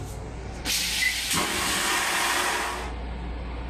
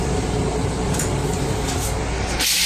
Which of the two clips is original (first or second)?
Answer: first